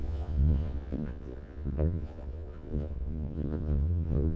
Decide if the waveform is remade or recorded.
remade